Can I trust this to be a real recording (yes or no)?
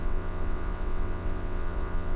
no